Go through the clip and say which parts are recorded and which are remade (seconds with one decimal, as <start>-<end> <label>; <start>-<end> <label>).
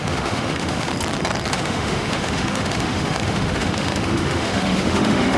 0.0-0.9 remade; 0.9-1.5 recorded; 1.5-5.4 remade